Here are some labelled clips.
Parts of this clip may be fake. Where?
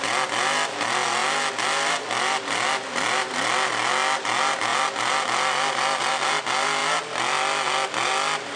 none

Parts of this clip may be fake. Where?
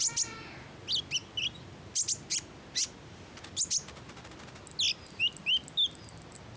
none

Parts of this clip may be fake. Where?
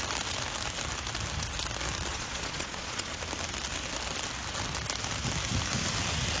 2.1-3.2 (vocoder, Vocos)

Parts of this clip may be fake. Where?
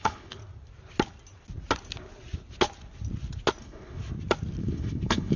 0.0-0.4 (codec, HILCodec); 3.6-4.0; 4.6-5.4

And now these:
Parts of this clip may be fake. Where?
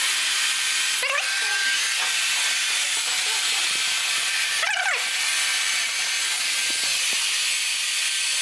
5.5-6.1 (vocoder, BigVGAN v2)